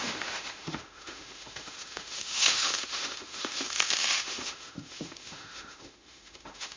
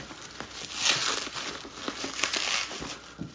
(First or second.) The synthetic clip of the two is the first